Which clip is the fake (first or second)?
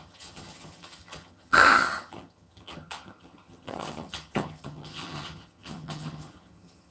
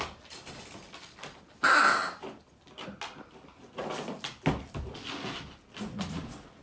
first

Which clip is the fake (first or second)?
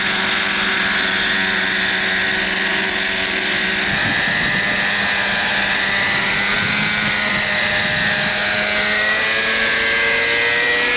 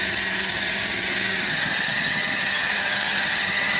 second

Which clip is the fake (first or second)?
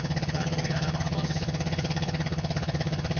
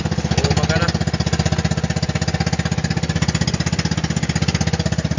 first